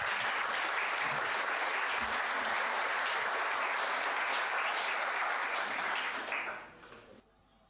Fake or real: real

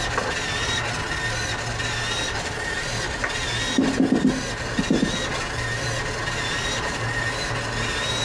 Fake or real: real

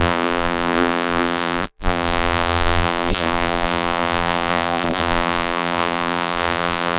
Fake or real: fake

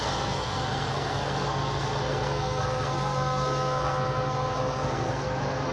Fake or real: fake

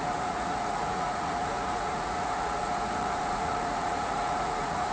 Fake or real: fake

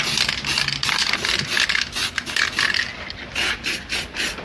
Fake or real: real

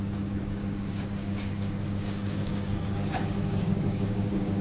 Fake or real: fake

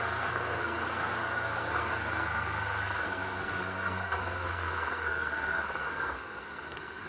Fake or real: fake